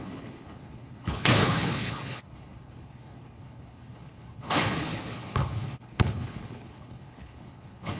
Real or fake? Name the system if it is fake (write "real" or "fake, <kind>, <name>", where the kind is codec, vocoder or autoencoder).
fake, codec, HILCodec